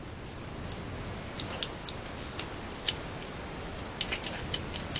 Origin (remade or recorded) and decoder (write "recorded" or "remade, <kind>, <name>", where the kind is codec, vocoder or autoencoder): recorded